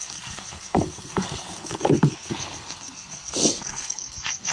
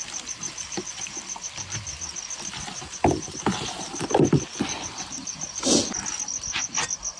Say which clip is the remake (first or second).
first